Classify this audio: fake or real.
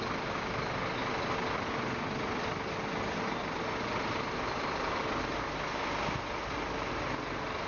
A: real